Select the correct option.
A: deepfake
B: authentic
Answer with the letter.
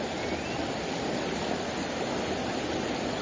B